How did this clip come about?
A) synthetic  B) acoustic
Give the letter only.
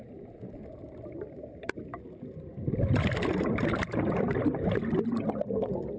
B